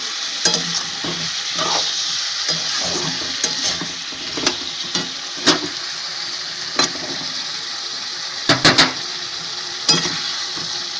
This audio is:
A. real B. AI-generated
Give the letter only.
A